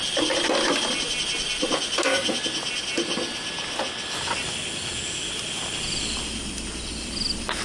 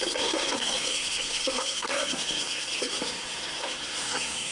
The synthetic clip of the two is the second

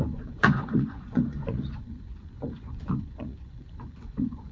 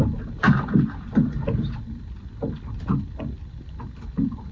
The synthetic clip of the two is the first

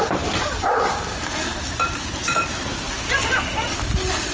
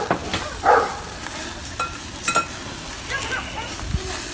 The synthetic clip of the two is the first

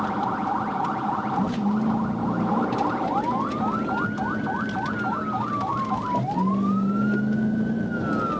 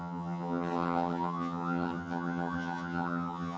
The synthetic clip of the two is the second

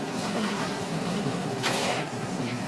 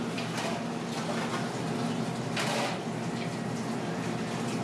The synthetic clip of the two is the first